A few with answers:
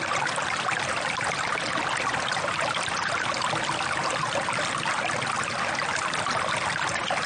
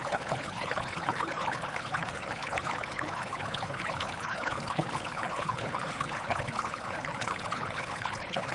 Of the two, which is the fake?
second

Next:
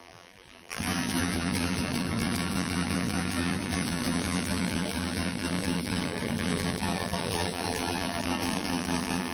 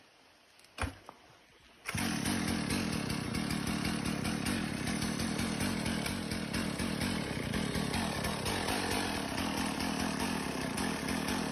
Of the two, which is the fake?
first